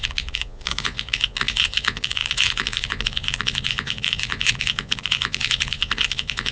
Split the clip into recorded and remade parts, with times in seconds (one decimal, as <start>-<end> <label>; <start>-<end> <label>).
0.0-6.5 remade